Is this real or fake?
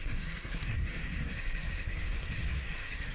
fake